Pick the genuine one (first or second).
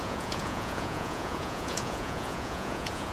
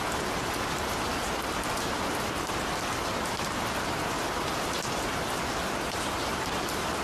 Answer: second